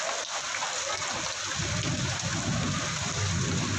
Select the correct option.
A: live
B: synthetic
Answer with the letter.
A